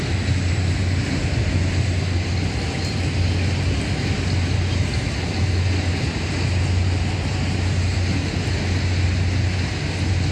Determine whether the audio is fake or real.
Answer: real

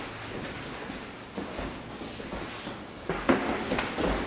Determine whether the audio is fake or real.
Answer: real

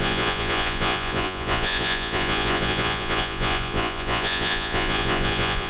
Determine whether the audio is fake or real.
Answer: fake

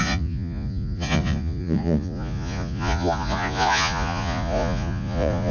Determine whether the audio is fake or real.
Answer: fake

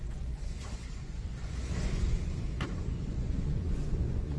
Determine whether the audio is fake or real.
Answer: fake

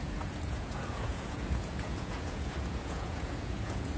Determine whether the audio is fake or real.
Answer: fake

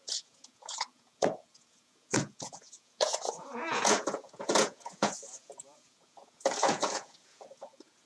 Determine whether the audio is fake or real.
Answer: fake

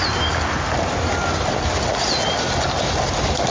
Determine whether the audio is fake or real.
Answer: real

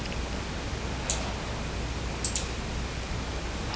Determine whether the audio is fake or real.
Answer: real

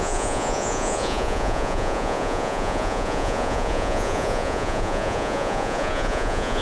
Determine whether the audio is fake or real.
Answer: fake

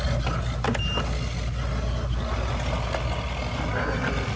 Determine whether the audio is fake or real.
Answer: real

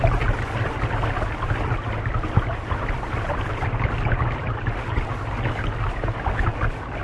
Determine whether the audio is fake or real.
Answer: real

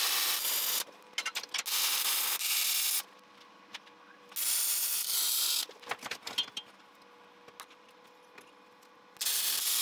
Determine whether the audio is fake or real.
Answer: real